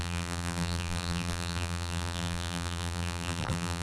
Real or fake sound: fake